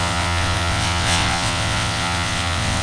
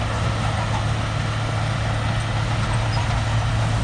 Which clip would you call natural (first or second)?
second